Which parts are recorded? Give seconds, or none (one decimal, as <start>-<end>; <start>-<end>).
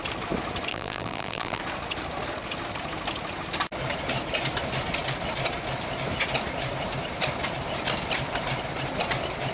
0.0-0.7; 1.6-9.5